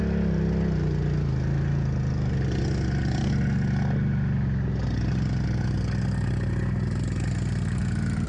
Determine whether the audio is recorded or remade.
recorded